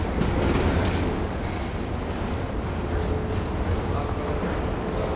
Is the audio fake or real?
real